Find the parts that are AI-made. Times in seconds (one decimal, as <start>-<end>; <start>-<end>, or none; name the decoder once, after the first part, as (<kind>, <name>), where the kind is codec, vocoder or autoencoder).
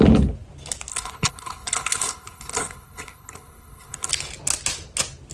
0.9-4.1 (codec, HILCodec)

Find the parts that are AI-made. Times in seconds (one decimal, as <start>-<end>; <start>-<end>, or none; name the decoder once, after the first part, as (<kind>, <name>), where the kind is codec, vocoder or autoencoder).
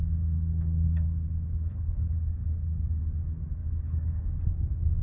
1.7-3.0 (codec, HILCodec); 3.6-4.2